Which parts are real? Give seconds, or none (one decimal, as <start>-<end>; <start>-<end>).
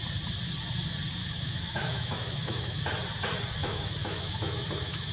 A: 0.0-1.2; 2.8-3.6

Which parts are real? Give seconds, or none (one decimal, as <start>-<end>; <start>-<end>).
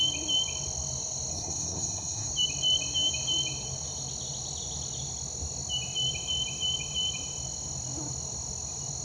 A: 0.0-1.3; 2.3-9.0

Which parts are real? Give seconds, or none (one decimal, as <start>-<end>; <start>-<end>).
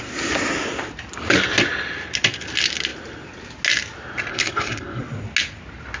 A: 0.0-4.3; 5.0-6.0